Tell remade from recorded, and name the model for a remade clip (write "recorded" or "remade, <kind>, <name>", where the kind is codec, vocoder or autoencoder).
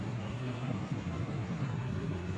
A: remade, codec, SNAC